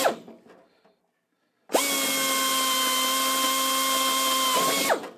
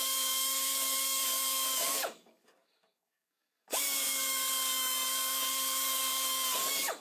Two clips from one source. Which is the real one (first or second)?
first